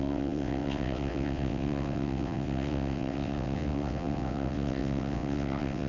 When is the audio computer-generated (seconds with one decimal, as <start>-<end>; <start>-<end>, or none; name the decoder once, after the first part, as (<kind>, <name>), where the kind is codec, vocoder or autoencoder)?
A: 0.0-5.9 (vocoder, WaveNeXt)